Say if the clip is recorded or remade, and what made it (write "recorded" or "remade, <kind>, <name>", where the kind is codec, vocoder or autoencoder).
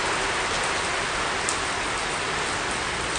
recorded